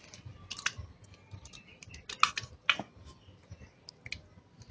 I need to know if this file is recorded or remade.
recorded